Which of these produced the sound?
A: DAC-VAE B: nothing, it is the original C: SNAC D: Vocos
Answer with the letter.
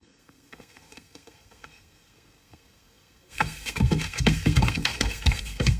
C